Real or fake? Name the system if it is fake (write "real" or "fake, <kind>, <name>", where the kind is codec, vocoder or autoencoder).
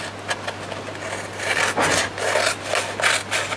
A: real